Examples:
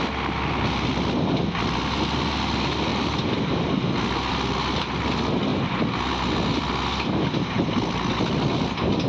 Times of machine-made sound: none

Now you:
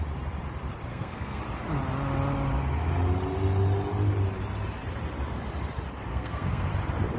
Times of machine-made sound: 0.9-1.4 (codec, SNAC); 6.1-6.7

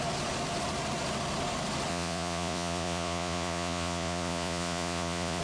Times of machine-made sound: 1.9-5.4 (vocoder, Vocos)